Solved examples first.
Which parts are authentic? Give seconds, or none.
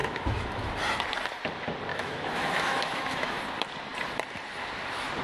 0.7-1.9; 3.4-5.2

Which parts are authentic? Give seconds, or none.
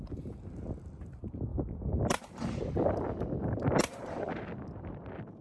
0.0-1.5; 2.6-3.4; 4.4-5.4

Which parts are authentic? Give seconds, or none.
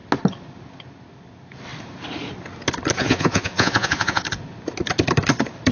0.0-3.0; 4.2-5.7